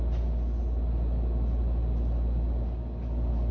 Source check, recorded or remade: recorded